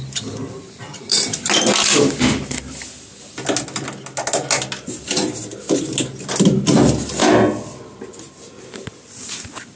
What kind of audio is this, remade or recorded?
recorded